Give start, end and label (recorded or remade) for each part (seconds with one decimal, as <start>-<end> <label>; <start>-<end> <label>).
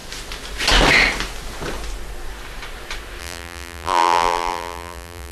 0.0-3.2 recorded; 3.2-5.3 remade